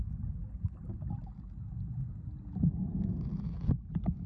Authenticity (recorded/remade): recorded